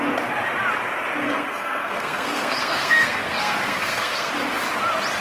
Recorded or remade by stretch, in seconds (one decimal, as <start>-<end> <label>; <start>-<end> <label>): 0.0-1.2 recorded; 1.2-4.3 remade; 4.3-5.2 recorded